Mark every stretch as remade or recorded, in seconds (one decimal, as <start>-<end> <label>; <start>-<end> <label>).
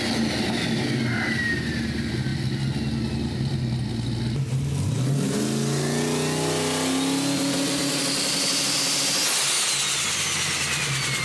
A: 0.0-11.2 recorded